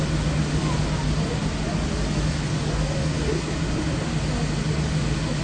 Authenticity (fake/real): real